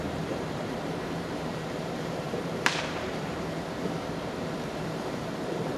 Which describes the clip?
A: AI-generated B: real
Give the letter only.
A